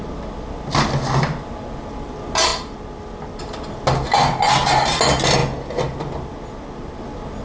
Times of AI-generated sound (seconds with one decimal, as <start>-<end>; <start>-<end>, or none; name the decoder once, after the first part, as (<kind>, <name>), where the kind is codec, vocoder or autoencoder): none